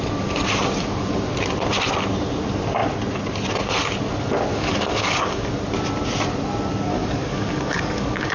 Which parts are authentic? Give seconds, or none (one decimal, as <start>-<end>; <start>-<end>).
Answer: 0.0-4.5; 5.5-6.9